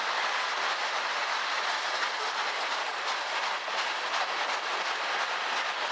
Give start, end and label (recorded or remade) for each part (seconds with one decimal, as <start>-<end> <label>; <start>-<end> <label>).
0.0-5.9 recorded